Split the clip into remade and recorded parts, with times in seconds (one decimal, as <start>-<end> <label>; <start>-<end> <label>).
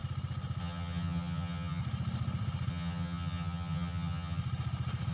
0.0-0.6 recorded; 0.6-1.8 remade; 1.8-2.7 recorded; 2.7-4.4 remade; 4.4-5.1 recorded